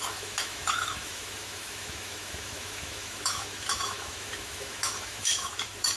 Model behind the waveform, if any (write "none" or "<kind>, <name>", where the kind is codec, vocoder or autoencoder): autoencoder, DAC-VAE